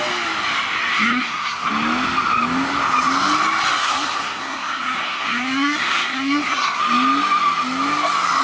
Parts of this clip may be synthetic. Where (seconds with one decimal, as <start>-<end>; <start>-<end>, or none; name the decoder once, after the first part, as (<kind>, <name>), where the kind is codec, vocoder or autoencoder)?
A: 0.9-1.7 (codec, SNAC); 3.8-6.8

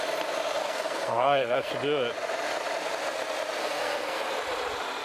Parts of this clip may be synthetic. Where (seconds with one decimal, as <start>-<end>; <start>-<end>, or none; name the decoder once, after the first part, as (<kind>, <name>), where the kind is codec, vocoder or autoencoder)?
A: 0.6-1.7 (codec, SNAC); 3.6-4.2